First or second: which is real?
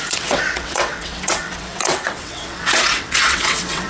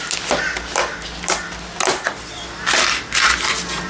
second